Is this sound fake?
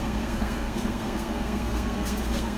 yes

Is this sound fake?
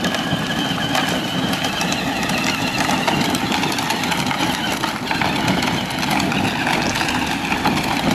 no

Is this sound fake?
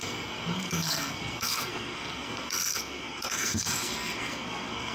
yes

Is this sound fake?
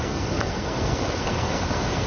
yes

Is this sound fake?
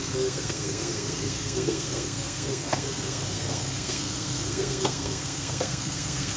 yes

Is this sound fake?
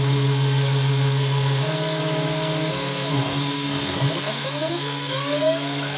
yes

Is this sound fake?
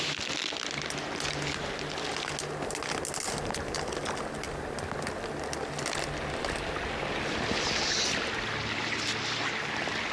no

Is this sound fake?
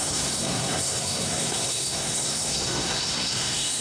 yes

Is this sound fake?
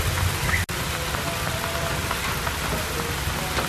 no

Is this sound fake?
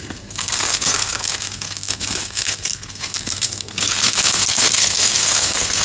yes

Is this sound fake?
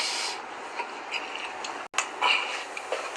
no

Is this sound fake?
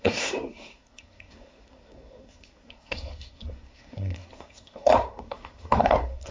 yes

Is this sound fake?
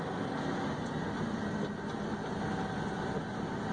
no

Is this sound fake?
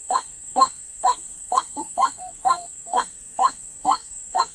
yes